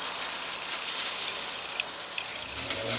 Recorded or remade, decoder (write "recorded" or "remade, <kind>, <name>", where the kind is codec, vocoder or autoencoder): recorded